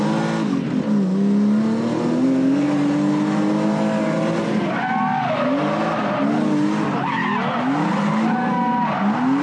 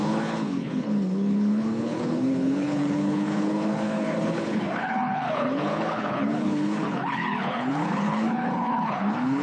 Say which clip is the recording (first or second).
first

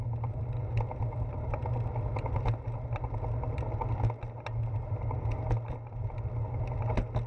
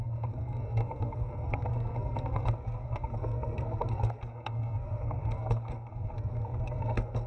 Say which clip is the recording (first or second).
first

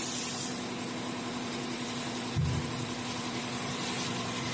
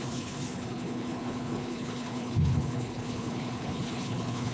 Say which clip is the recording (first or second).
first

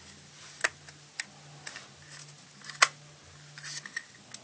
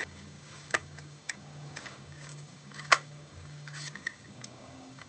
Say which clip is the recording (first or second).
first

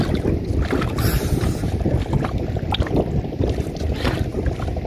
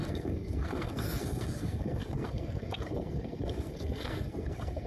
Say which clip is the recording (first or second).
first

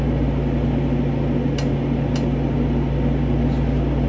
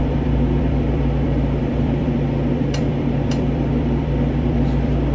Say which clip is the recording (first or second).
first